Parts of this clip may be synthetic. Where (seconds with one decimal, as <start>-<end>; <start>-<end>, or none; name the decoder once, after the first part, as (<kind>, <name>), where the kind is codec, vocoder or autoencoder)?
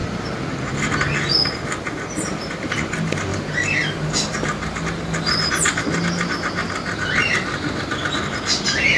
3.3-5.5 (vocoder, BigVGAN v2); 6.6-8.0